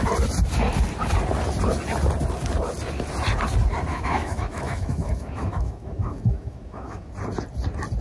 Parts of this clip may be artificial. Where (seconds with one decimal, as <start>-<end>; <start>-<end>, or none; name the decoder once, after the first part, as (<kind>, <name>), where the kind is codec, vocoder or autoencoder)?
3.9-7.1 (autoencoder, DAC-VAE)